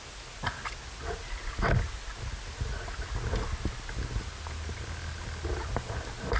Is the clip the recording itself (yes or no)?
yes